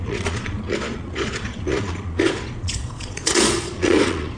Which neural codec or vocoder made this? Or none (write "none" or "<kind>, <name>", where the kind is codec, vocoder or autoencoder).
vocoder, Vocos